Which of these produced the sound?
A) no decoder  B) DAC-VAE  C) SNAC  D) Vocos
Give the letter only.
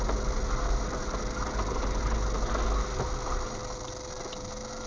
A